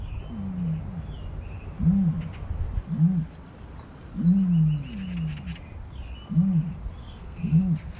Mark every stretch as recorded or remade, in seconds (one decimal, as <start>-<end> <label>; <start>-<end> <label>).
0.0-7.0 recorded; 7.0-7.6 remade; 7.6-8.0 recorded